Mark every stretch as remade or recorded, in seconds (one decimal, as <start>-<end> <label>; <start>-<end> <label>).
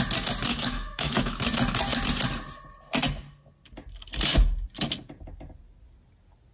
0.0-0.5 recorded; 0.5-1.4 remade; 1.4-6.5 recorded